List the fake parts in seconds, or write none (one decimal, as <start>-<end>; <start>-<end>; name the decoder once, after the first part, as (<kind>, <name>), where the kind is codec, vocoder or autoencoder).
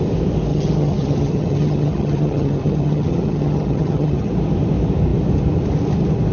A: 0.5-4.3 (vocoder, HiFi-GAN)